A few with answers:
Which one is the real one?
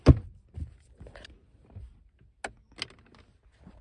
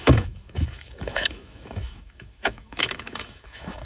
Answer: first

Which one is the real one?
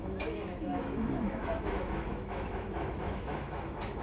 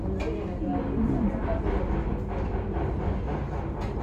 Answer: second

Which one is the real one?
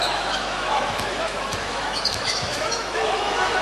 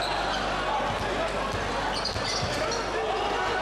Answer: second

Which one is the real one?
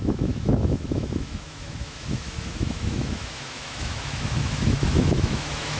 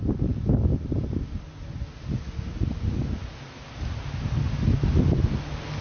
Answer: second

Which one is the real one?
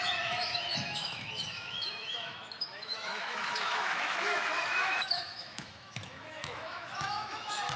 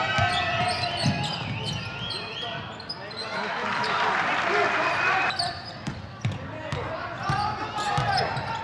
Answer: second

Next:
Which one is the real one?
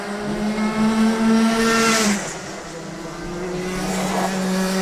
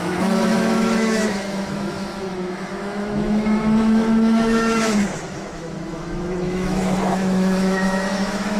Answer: first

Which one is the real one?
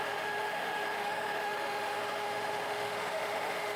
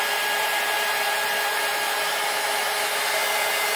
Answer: second